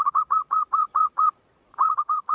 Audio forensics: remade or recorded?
remade